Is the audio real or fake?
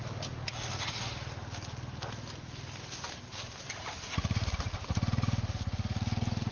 real